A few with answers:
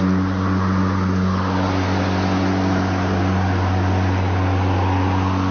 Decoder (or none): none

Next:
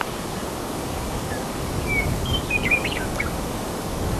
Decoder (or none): codec, DAC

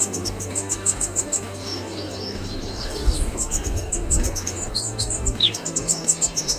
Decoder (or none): codec, DAC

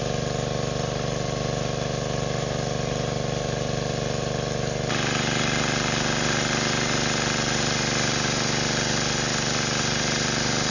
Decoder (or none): none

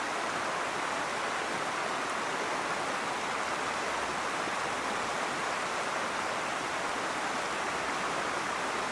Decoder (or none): none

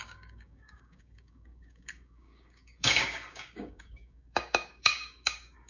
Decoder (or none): codec, DAC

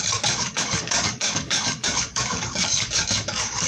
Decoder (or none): codec, DAC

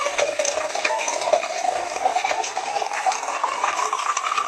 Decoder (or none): codec, DAC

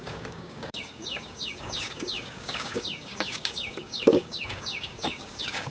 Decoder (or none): codec, DAC